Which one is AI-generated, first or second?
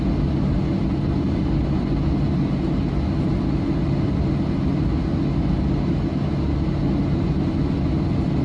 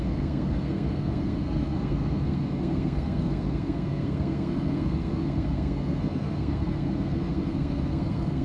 second